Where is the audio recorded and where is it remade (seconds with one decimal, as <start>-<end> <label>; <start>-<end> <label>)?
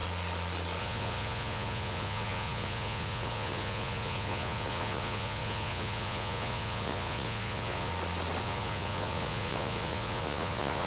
0.0-0.8 recorded; 0.8-7.9 remade; 7.9-8.4 recorded; 8.4-10.9 remade